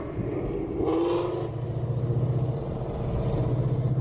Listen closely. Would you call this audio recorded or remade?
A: recorded